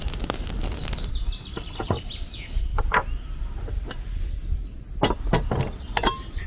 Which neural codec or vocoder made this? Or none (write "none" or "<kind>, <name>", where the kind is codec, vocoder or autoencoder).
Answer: none